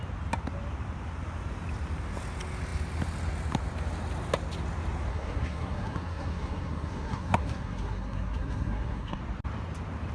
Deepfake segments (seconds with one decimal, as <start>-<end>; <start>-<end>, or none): 5.1-9.2